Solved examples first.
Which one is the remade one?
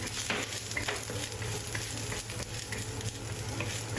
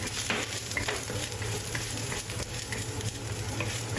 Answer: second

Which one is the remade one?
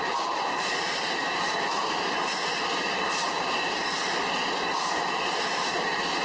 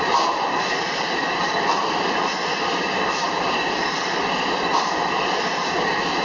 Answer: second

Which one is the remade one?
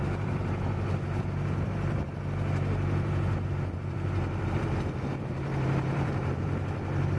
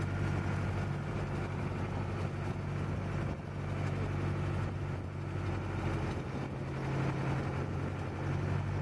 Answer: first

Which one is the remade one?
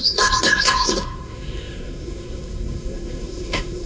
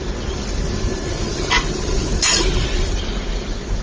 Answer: first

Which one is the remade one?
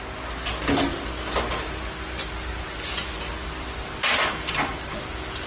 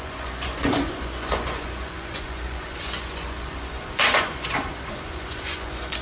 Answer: second